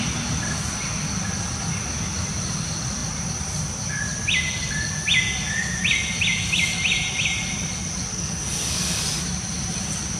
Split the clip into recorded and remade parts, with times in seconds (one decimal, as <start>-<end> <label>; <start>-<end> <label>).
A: 0.0-8.1 recorded; 8.1-9.0 remade; 9.0-10.2 recorded

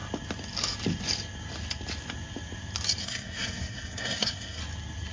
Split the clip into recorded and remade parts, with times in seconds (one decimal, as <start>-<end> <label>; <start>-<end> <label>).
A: 0.0-3.0 recorded; 3.0-4.6 remade; 4.6-5.1 recorded

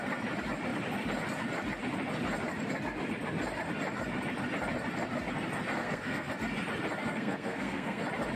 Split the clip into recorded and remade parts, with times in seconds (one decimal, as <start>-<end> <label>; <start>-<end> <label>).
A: 0.0-5.8 recorded; 5.8-6.3 remade; 6.3-7.0 recorded; 7.0-8.0 remade; 8.0-8.4 recorded

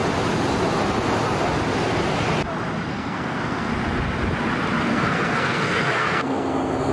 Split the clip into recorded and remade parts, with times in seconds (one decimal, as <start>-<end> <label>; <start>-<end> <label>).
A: 0.0-2.9 recorded; 2.9-3.7 remade; 3.7-4.8 recorded; 4.8-6.9 remade